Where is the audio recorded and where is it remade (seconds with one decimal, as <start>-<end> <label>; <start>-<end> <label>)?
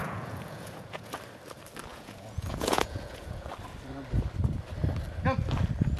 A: 0.0-1.1 remade; 1.1-1.9 recorded; 1.9-3.5 remade; 3.5-6.0 recorded